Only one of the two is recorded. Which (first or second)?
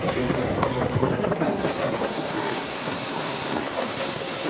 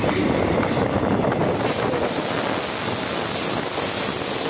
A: second